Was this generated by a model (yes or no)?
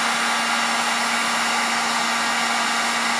no